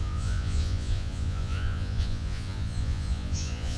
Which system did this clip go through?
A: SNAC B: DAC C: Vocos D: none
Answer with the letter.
C